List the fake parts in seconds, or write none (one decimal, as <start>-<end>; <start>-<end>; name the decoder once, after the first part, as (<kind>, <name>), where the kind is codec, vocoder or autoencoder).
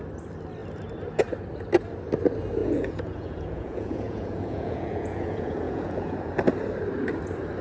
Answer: 2.6-6.3 (vocoder, Vocos)